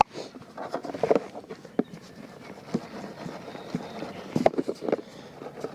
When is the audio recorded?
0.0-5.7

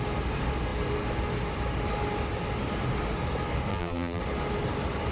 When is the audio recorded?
0.0-3.7; 4.2-5.1

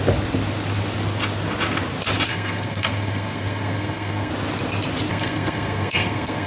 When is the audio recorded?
0.0-2.3; 4.3-5.1

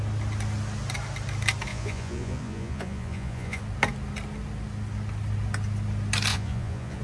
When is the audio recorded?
0.0-1.7; 3.6-6.3

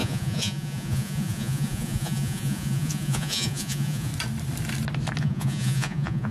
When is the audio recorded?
4.1-5.2